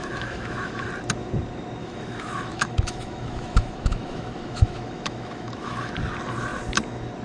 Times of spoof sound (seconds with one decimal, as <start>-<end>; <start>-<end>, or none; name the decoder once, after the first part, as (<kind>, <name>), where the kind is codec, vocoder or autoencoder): 0.0-0.9 (autoencoder, DAC-VAE); 1.8-5.9